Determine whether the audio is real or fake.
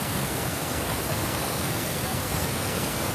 fake